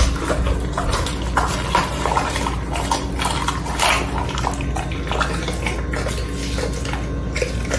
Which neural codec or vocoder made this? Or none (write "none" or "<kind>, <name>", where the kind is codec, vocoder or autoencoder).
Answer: none